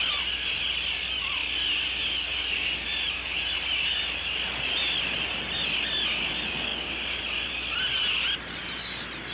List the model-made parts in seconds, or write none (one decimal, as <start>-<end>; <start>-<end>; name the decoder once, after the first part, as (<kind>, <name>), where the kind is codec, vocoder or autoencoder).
none